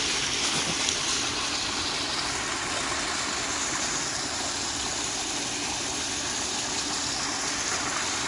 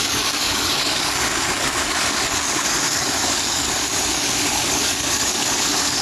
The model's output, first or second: second